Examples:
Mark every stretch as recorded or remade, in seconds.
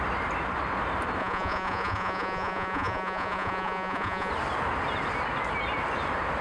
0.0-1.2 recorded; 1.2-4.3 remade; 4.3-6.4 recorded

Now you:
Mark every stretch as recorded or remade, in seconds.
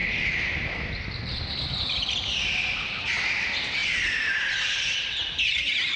0.0-6.0 recorded